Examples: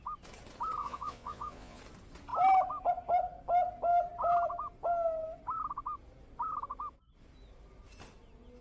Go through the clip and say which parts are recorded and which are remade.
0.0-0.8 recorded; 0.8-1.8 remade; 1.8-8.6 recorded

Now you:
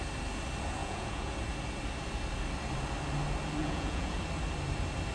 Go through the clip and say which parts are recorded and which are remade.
0.0-0.8 recorded; 0.8-1.3 remade; 1.3-3.6 recorded; 3.6-4.2 remade; 4.2-5.1 recorded

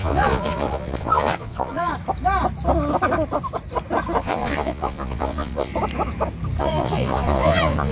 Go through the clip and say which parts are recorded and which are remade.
0.0-1.9 remade; 1.9-4.2 recorded; 4.2-5.7 remade; 5.7-6.6 recorded; 6.6-7.9 remade

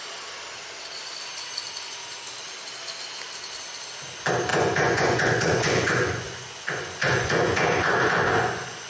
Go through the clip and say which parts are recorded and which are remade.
0.0-4.5 recorded; 4.5-8.9 remade

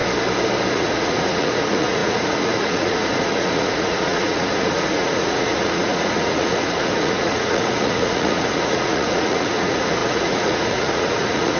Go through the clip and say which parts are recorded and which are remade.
0.0-0.7 recorded; 0.7-11.6 remade